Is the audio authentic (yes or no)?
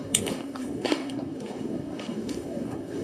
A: no